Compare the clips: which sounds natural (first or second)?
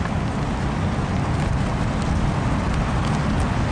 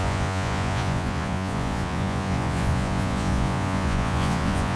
first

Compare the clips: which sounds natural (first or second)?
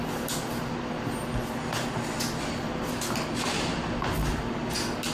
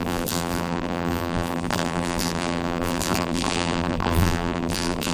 first